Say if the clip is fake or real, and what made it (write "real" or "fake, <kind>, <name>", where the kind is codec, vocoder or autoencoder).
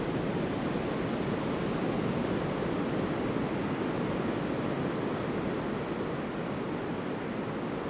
real